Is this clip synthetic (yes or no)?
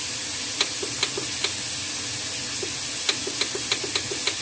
no